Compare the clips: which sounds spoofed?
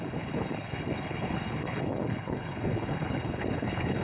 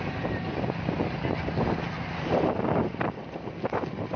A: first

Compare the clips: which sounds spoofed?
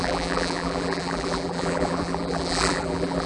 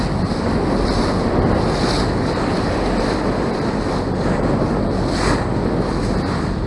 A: first